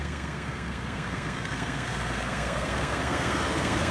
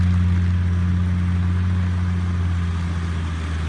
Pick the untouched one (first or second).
second